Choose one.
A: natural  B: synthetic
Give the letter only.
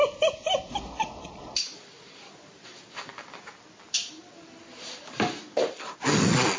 A